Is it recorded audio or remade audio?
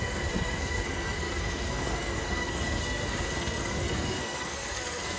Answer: remade